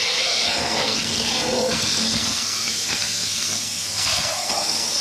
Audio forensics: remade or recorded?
remade